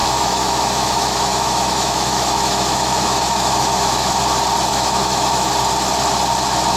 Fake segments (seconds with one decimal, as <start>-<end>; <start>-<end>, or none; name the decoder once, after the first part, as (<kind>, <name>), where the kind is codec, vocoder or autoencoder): 0.0-4.1 (autoencoder, DAC-VAE); 4.7-5.5